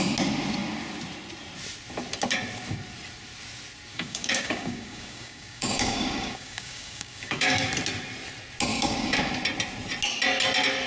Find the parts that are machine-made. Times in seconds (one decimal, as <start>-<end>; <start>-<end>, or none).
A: 3.9-7.7; 8.7-9.3